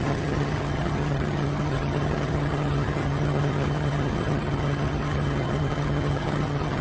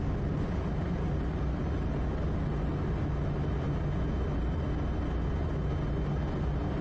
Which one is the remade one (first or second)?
first